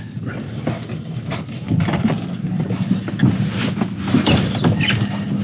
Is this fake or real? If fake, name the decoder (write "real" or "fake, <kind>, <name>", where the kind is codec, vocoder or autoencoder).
real